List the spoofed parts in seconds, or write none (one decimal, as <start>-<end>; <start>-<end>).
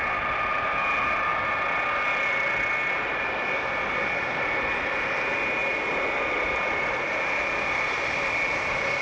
none